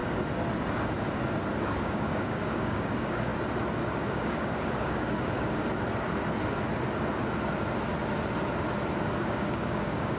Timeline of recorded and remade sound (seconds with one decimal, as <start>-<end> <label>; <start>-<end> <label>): 0.0-1.6 recorded; 1.6-3.3 remade; 3.3-3.9 recorded; 3.9-5.6 remade; 5.6-9.2 recorded; 9.2-10.2 remade